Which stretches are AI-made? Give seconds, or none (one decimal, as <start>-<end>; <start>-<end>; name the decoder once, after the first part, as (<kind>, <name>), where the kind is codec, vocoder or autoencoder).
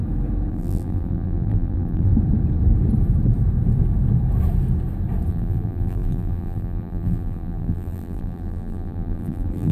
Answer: 0.5-2.1 (vocoder, BigVGAN v2); 5.3-9.7